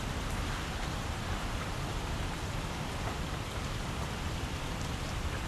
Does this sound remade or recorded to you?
remade